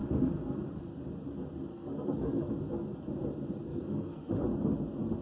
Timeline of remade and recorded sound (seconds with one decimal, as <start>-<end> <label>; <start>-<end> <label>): 0.0-1.7 recorded; 1.7-2.5 remade; 2.5-3.7 recorded; 3.7-4.3 remade; 4.3-5.2 recorded